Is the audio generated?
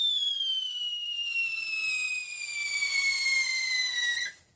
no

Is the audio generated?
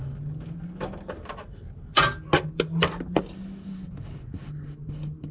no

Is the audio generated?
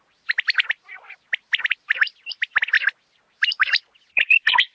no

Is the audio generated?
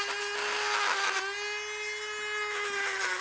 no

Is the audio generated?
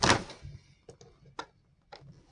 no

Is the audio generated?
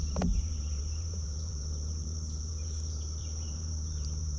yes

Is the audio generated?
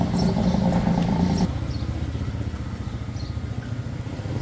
no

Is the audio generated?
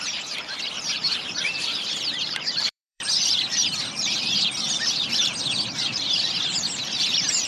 yes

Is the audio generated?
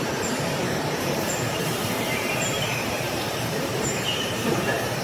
yes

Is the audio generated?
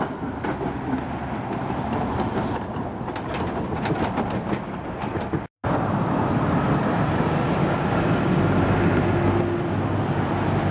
no